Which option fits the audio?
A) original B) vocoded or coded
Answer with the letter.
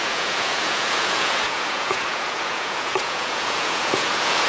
B